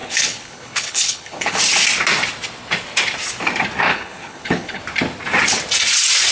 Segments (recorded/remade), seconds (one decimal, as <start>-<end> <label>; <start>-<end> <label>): 0.0-1.6 remade; 1.6-3.9 recorded; 3.9-4.8 remade; 4.8-6.3 recorded